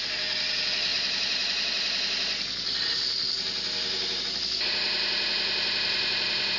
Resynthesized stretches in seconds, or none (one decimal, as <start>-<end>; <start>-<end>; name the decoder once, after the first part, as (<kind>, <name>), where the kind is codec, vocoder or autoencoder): none